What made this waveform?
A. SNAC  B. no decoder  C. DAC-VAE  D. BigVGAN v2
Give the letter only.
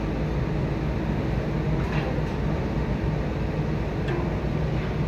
B